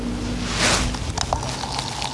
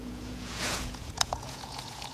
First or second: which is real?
first